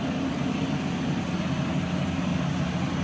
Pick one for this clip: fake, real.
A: real